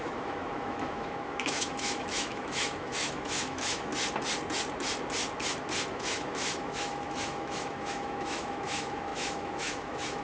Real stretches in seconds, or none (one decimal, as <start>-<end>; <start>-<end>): 3.9-5.9